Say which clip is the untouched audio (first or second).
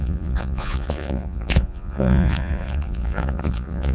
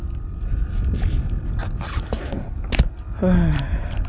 second